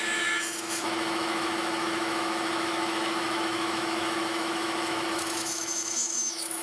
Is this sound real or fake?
fake